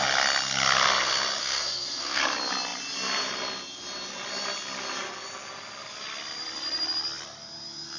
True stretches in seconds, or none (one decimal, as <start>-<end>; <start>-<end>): 0.0-1.4; 2.2-8.0